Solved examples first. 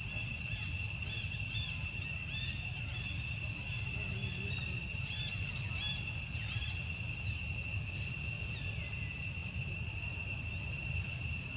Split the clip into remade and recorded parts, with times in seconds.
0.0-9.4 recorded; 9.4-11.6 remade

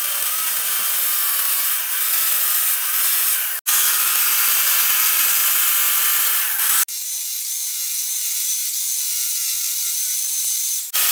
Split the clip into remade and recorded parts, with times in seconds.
0.0-11.1 recorded

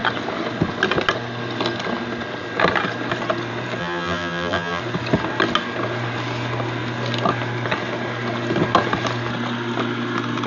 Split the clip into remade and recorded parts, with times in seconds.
0.0-3.8 recorded; 3.8-4.8 remade; 4.8-10.5 recorded

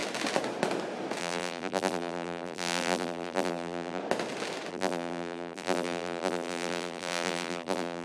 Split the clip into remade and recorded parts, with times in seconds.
0.0-1.2 recorded; 1.2-4.0 remade; 4.0-4.7 recorded; 4.7-8.0 remade